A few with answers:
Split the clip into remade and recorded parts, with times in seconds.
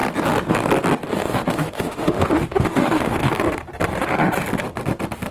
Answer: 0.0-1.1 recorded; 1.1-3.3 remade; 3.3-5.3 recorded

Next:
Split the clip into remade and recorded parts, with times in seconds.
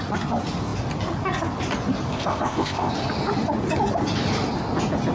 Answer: 0.0-2.1 recorded; 2.1-2.9 remade; 2.9-5.1 recorded